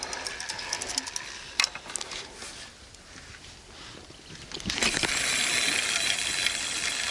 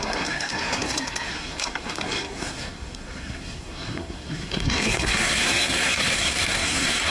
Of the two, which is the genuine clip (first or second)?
first